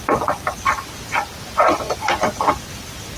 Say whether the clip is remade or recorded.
recorded